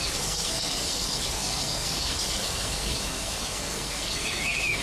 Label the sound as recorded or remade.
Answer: remade